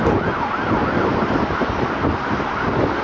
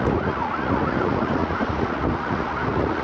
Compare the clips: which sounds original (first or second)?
first